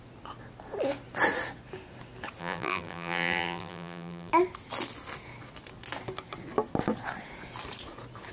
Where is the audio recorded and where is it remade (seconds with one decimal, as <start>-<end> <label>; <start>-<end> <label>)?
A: 0.0-2.4 recorded; 2.4-4.3 remade; 4.3-8.3 recorded